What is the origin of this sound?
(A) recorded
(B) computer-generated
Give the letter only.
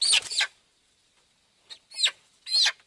A